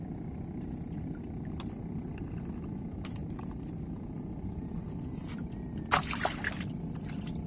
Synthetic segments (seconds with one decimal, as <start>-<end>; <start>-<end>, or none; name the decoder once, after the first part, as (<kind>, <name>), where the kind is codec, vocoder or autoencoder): none